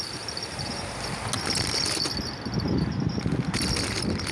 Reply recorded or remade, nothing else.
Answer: recorded